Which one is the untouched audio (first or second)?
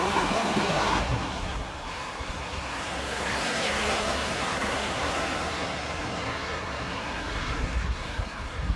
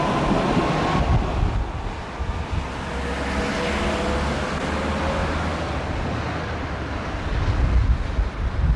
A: second